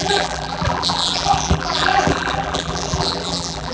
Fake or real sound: fake